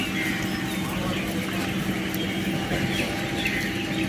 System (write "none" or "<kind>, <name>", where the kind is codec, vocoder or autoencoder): none